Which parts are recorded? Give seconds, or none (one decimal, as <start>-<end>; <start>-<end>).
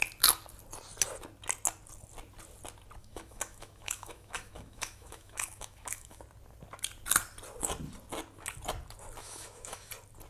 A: 0.0-3.0; 6.2-9.2; 9.9-10.3